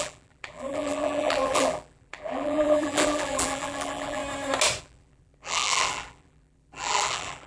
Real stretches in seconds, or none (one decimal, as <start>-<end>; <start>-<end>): 4.2-4.8